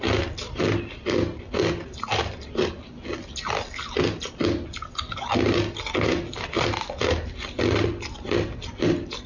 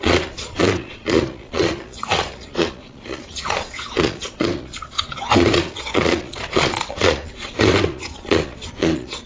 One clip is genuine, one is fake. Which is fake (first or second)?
second